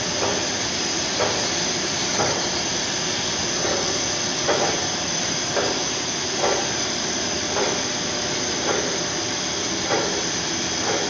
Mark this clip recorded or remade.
remade